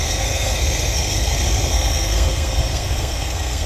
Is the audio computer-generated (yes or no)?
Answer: yes